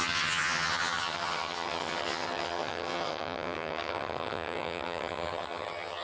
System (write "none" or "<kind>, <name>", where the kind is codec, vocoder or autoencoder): vocoder, HiFi-GAN